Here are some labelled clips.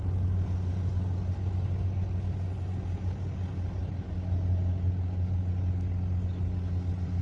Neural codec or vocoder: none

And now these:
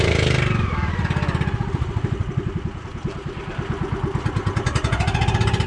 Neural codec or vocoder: none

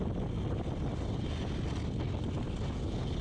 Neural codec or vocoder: none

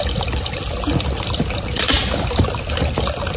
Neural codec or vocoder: none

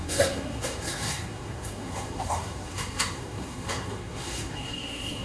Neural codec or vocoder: codec, SNAC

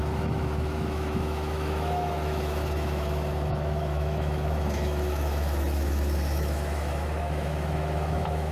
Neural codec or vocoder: autoencoder, DAC-VAE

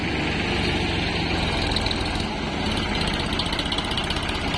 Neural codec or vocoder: none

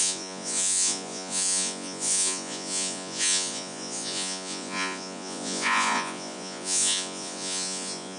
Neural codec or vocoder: vocoder, Vocos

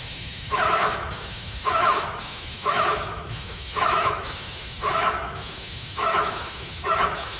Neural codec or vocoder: autoencoder, DAC-VAE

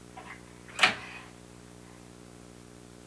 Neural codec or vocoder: none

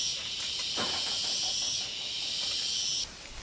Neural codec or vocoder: none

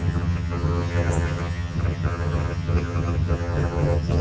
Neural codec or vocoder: vocoder, HiFi-GAN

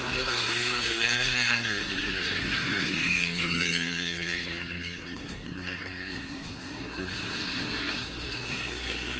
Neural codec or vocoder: codec, SNAC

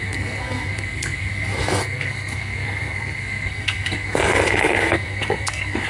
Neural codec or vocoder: codec, SNAC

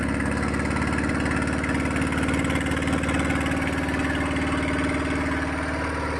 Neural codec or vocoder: none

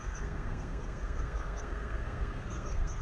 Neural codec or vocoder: codec, SNAC